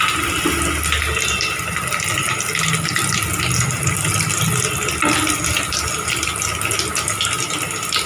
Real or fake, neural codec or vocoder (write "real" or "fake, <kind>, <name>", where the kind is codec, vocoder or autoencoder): real